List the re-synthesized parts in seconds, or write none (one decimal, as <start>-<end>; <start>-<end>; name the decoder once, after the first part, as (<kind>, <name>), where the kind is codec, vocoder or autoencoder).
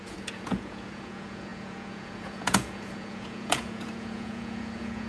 0.0-5.1 (vocoder, Vocos)